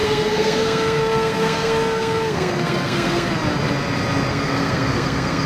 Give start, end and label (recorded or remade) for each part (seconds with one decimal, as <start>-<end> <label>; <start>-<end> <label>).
0.0-3.3 remade; 3.3-4.3 recorded; 4.3-5.5 remade